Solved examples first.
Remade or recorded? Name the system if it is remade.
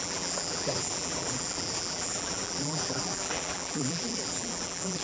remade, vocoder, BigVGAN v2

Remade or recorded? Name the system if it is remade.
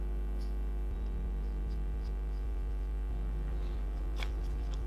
recorded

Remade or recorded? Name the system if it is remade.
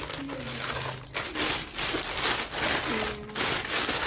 recorded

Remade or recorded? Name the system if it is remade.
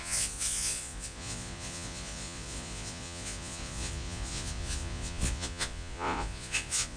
remade, vocoder, Vocos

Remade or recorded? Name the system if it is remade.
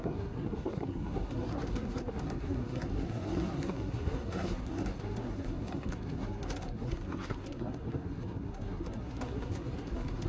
remade, codec, SNAC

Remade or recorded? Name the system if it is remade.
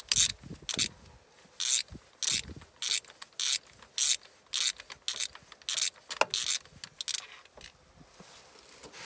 recorded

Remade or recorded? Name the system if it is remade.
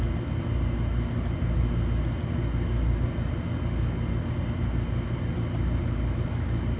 recorded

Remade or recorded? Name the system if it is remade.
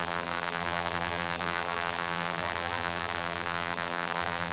remade, vocoder, BigVGAN v2